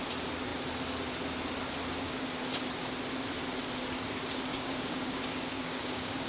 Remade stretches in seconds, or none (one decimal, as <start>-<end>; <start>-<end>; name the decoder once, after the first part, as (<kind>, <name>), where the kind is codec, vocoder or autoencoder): 4.5-6.3 (codec, DAC)